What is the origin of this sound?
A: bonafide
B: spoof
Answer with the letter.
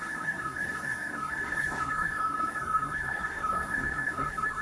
B